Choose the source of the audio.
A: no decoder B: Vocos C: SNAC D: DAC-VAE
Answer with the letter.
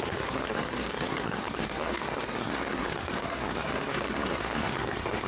C